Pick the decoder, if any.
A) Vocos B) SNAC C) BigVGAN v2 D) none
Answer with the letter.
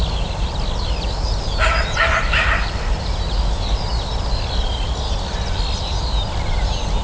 D